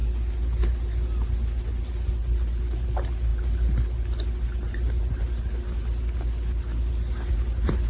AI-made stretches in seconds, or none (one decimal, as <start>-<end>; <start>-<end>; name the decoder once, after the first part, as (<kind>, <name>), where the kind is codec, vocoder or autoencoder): none